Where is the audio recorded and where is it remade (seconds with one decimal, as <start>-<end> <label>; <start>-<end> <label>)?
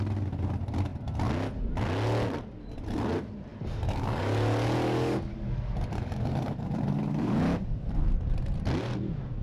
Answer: 0.0-3.5 recorded; 3.5-7.9 remade; 7.9-9.4 recorded